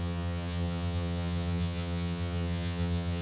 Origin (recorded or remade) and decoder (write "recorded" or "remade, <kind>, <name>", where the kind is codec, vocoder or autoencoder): remade, vocoder, HiFi-GAN